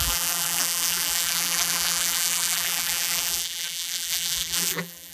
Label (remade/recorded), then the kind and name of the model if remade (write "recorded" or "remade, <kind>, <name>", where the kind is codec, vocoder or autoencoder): remade, vocoder, BigVGAN v2